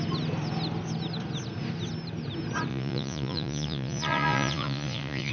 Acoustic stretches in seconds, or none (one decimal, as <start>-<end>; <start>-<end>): 0.0-2.7